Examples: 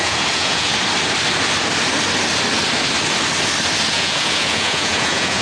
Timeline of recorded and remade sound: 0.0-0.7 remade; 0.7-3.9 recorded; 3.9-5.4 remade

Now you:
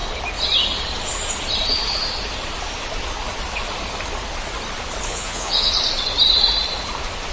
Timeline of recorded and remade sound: 0.0-5.1 recorded; 5.1-5.7 remade; 5.7-7.3 recorded

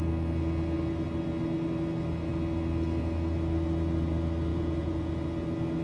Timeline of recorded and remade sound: 0.0-4.5 recorded; 4.5-5.1 remade; 5.1-5.8 recorded

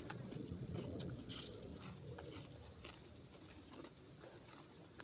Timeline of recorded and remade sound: 0.0-1.7 remade; 1.7-5.0 recorded

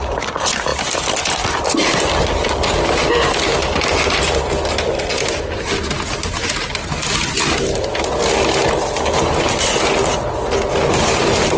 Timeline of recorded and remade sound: 0.0-11.6 recorded

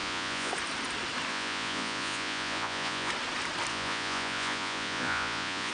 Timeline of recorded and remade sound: 0.0-0.5 remade; 0.5-1.3 recorded; 1.3-3.1 remade; 3.1-3.7 recorded; 3.7-5.7 remade

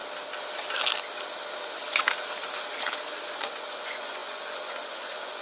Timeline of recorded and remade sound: 0.0-3.2 recorded; 3.2-5.4 remade

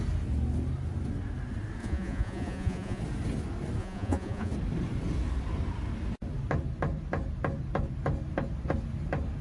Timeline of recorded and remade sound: 0.0-1.8 recorded; 1.8-3.0 remade; 3.0-3.8 recorded; 3.8-4.5 remade; 4.5-9.4 recorded